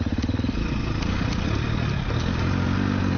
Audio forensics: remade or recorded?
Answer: recorded